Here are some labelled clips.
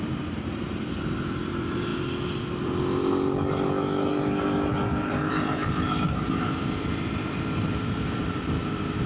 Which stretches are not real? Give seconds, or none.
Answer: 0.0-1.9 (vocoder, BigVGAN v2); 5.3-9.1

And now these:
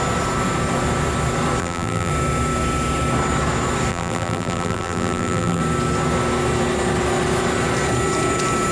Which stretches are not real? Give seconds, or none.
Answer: 1.6-2.1 (vocoder, BigVGAN v2); 3.9-5.6